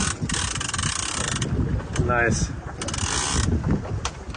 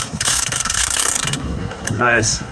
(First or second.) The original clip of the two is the first